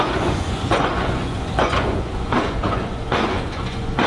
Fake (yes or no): yes